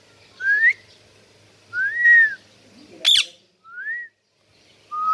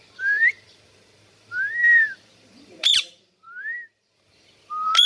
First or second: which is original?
first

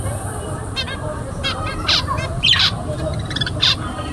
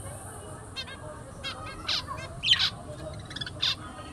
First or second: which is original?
second